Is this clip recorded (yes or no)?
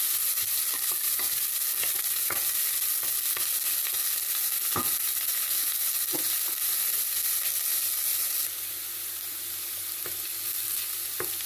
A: yes